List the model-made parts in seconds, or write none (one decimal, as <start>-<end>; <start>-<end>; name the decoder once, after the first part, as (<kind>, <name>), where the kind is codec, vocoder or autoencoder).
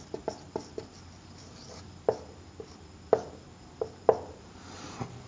none